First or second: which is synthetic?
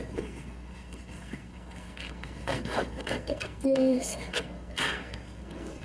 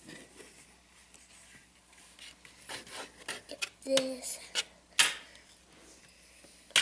first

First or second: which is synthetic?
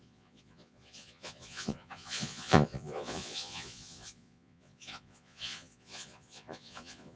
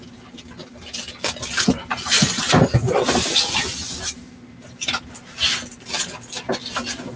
first